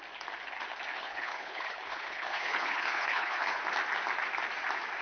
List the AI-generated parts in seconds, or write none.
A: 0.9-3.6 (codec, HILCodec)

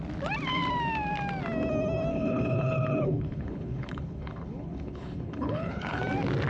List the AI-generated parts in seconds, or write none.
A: 2.1-6.0 (codec, HILCodec)

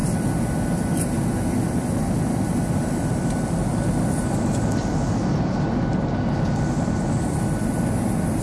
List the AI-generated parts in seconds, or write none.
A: none